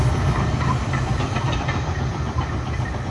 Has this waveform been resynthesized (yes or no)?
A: no